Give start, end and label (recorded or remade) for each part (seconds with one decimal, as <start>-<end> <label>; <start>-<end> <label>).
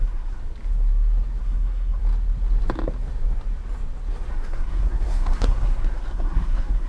0.0-0.4 remade; 0.4-1.4 recorded; 1.4-2.0 remade; 2.0-4.3 recorded; 4.3-6.9 remade